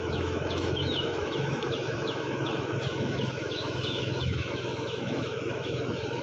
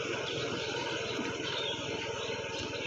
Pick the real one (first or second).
second